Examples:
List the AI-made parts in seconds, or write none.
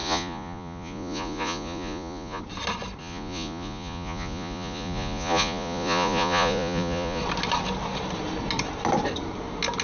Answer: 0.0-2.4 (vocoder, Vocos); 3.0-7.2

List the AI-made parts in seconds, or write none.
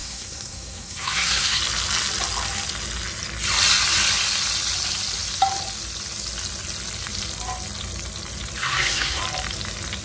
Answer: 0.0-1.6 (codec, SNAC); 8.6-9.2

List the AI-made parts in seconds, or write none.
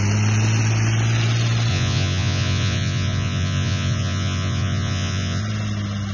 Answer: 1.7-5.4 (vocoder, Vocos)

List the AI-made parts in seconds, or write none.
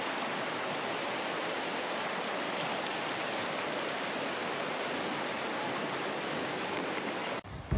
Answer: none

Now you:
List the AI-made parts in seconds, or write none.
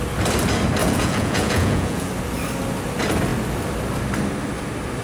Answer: 0.8-2.1 (vocoder, Vocos)